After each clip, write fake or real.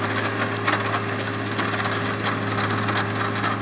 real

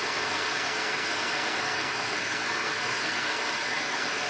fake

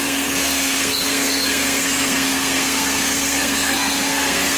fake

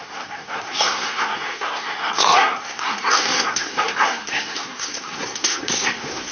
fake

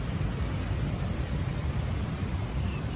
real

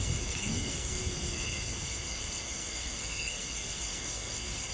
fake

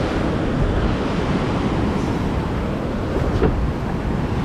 real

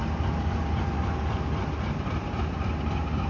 real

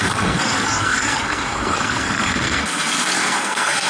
fake